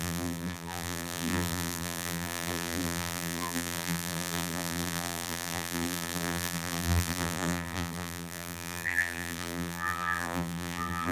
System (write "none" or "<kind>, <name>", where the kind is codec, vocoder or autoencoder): vocoder, BigVGAN v2